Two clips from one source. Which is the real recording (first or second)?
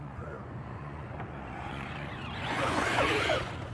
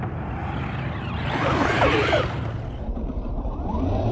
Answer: second